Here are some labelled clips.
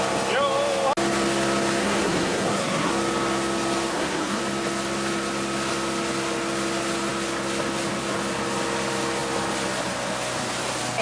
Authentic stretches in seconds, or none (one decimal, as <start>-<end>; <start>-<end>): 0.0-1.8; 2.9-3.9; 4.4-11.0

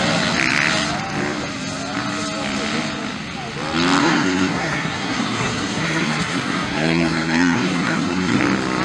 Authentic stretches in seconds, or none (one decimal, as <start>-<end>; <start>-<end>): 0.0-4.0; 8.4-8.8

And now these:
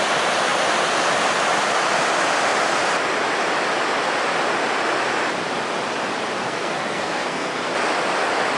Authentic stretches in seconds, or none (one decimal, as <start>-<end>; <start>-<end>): 0.0-6.4; 7.7-8.6

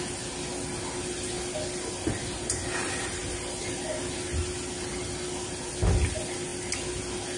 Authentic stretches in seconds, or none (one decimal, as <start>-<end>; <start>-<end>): 0.0-7.4

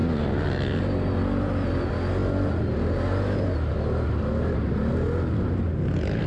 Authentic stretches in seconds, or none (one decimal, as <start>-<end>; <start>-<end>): 0.0-6.3